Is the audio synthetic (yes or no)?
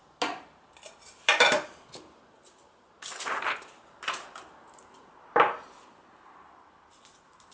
no